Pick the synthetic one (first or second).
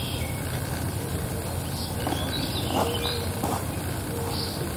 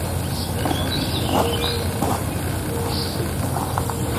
first